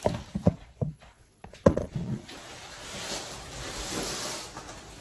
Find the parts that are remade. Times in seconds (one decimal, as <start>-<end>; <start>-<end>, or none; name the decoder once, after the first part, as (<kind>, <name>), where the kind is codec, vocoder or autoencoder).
0.4-2.3 (vocoder, Vocos)